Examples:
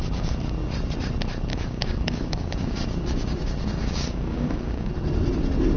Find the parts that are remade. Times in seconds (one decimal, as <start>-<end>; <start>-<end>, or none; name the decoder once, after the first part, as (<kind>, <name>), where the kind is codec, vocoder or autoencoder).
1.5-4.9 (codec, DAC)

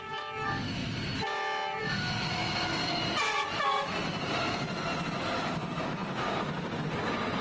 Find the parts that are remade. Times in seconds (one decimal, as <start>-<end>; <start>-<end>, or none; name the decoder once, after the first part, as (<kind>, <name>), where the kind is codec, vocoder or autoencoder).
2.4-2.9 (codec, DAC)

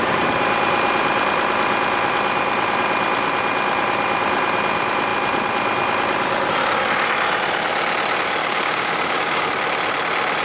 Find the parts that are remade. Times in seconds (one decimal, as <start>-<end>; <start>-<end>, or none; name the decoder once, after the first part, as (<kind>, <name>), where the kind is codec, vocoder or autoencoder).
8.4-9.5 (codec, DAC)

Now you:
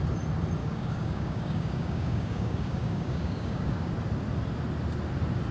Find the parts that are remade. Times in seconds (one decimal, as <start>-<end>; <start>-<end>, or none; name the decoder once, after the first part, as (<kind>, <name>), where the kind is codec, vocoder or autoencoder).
0.6-3.9 (codec, DAC)

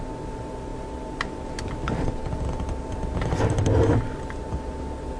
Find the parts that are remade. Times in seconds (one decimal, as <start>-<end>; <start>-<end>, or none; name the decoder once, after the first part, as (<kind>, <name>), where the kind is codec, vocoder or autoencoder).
none